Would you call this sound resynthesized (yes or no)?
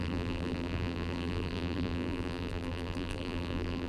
yes